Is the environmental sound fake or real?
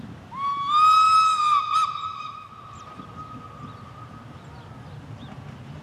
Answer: real